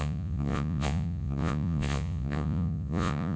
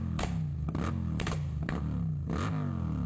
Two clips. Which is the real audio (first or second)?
second